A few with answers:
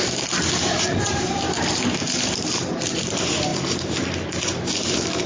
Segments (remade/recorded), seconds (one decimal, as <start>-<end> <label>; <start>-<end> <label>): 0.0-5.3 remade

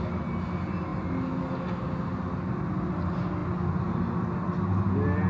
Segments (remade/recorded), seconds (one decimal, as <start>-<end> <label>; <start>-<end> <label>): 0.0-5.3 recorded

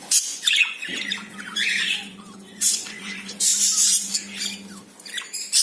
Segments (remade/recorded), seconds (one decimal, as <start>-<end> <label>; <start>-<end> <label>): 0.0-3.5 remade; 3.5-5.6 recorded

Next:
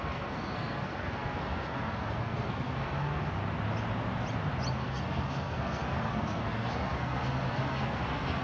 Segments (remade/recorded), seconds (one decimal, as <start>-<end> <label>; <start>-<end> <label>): 0.0-3.4 remade; 3.4-4.7 recorded; 4.7-8.4 remade

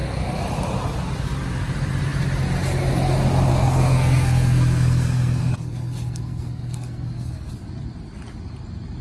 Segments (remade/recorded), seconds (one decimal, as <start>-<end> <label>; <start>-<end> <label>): 0.0-3.5 recorded; 3.5-7.5 remade; 7.5-9.0 recorded

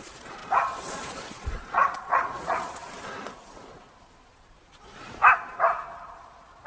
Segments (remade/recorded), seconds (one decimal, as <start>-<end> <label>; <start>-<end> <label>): 0.0-2.8 remade; 2.8-4.3 recorded; 4.3-5.2 remade; 5.2-6.2 recorded; 6.2-6.7 remade